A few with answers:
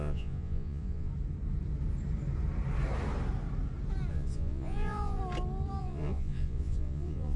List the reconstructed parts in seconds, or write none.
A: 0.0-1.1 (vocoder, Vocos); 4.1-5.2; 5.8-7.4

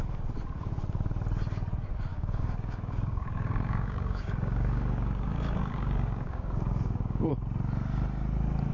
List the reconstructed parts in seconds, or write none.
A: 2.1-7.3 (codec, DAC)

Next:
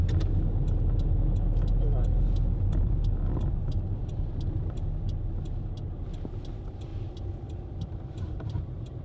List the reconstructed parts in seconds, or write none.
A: 3.5-4.0 (vocoder, BigVGAN v2); 6.3-6.9; 7.5-9.0